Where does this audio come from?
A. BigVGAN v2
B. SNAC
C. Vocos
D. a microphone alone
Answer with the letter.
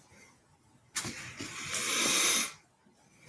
D